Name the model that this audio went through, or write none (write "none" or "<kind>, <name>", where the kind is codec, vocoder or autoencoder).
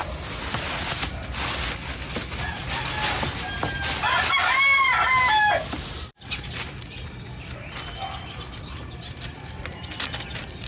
none